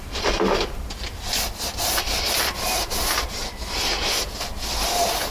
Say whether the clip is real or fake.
real